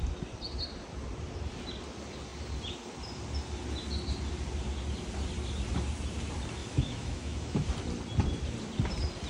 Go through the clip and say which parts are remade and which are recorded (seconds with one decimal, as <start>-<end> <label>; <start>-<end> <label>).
0.0-6.6 recorded; 6.6-7.6 remade; 7.6-9.3 recorded